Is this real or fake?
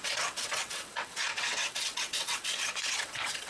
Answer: fake